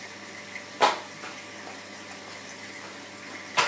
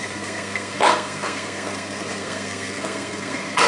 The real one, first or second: first